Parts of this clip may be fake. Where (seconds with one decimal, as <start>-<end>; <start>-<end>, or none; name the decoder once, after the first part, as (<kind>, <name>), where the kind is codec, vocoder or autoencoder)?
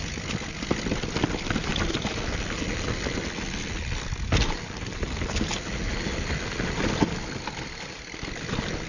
none